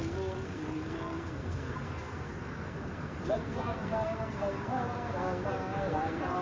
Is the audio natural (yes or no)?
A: no